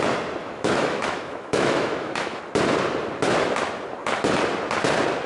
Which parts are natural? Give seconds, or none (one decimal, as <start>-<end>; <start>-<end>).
0.0-0.4; 2.4-5.3